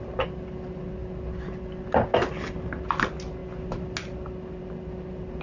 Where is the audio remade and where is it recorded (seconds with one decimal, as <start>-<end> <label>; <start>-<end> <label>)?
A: 0.0-5.4 recorded